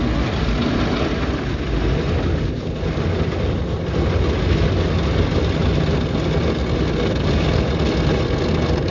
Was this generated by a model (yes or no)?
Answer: no